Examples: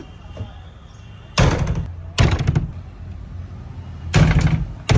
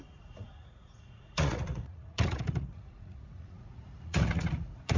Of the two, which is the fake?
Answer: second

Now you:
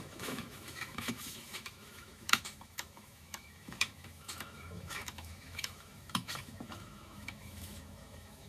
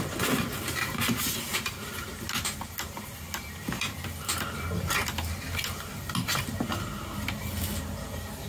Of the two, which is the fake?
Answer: first